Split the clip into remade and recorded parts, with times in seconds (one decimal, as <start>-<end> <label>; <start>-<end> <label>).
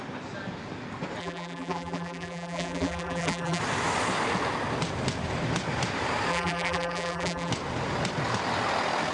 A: 0.0-1.2 recorded; 1.2-3.6 remade; 3.6-6.3 recorded; 6.3-7.5 remade; 7.5-9.1 recorded